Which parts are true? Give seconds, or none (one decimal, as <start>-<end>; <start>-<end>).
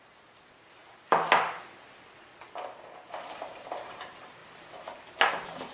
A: 0.8-3.1; 4.4-5.3